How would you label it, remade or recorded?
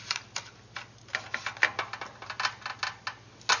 recorded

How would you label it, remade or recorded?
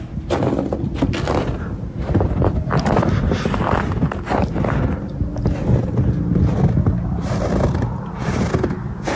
recorded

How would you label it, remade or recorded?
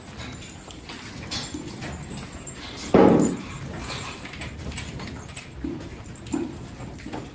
recorded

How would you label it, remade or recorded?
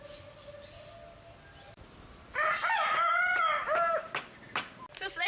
recorded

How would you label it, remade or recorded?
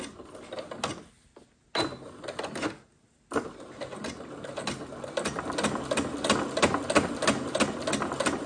recorded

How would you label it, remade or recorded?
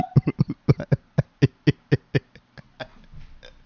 recorded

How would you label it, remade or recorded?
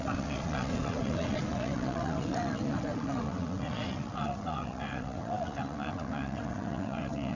remade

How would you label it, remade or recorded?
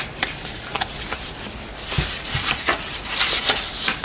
recorded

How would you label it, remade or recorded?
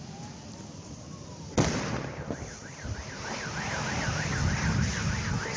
recorded